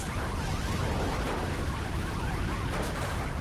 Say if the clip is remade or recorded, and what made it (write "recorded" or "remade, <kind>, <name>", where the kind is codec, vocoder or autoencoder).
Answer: remade, vocoder, BigVGAN v2